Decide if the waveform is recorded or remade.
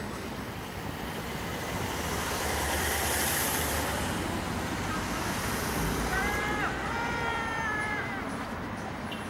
remade